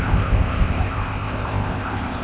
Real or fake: fake